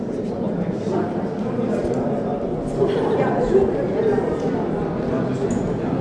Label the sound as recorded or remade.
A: recorded